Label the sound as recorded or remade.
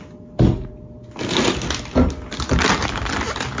recorded